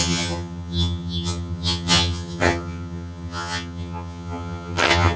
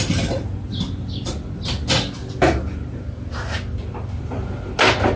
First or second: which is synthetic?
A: first